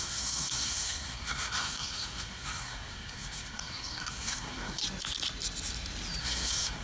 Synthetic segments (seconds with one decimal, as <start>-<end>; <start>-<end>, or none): 0.0-4.8; 6.2-6.8